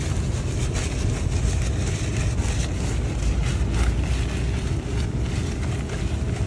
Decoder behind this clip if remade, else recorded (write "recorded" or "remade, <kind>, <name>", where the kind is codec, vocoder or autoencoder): recorded